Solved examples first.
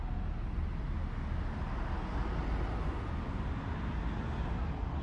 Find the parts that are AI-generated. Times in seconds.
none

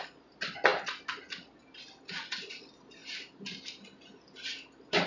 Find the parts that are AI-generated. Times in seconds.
none

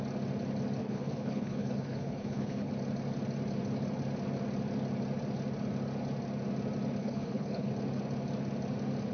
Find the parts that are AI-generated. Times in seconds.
0.8-2.7; 7.0-7.7

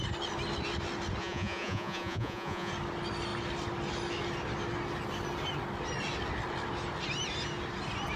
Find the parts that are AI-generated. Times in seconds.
1.2-2.7

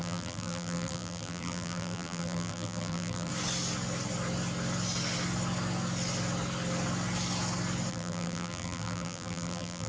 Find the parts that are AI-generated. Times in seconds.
0.0-3.3; 7.9-9.9

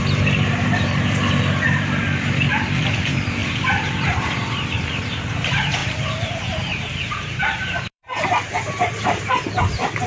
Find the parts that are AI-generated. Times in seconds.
0.0-10.1